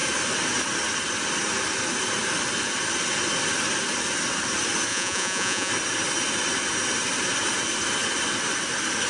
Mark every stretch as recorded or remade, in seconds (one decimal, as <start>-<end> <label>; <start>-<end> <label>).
0.0-4.9 recorded; 4.9-5.7 remade; 5.7-9.1 recorded